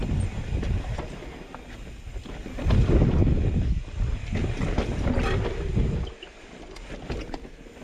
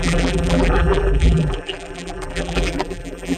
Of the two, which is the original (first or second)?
first